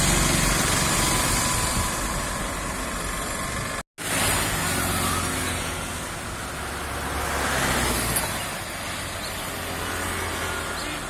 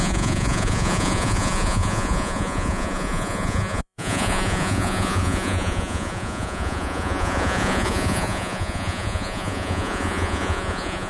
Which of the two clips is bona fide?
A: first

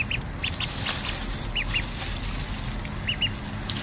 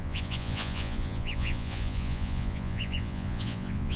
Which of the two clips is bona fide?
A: first